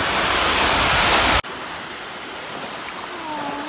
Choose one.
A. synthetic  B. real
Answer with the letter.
B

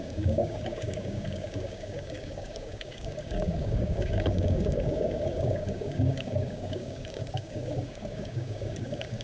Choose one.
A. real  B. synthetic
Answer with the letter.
B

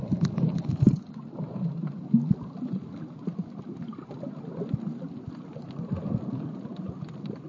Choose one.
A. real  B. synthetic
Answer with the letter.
A